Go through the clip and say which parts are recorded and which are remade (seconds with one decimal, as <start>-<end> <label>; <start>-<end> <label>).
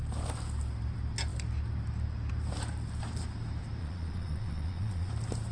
0.0-3.8 recorded; 3.8-5.1 remade; 5.1-5.5 recorded